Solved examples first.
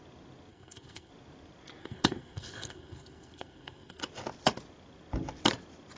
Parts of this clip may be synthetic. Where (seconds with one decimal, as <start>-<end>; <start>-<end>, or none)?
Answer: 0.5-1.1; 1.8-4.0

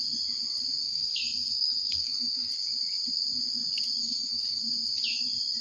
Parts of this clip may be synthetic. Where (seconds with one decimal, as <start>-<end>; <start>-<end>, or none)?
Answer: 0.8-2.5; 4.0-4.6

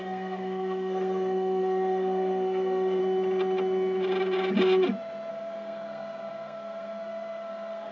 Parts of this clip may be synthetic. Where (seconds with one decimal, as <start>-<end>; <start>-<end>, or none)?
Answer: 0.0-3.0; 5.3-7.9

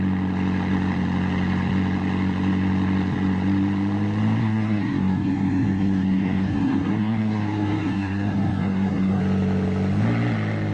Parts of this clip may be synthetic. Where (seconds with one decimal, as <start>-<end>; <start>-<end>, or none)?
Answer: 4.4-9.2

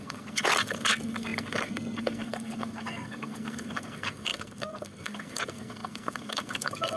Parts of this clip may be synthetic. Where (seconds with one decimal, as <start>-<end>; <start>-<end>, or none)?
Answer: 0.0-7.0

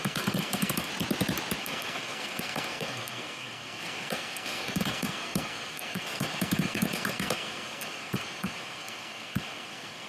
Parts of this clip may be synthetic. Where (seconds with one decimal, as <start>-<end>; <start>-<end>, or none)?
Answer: 0.0-0.9; 1.6-10.1